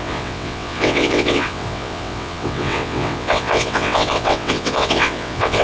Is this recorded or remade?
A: remade